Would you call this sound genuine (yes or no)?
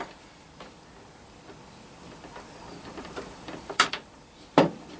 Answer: no